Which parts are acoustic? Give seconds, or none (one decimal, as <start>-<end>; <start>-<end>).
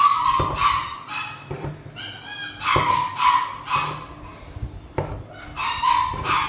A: 0.0-6.5